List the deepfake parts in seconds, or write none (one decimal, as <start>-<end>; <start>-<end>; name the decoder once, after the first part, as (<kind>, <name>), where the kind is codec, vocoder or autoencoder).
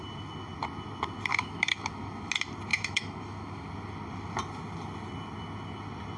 1.3-2.3 (autoencoder, DAC-VAE); 2.7-3.7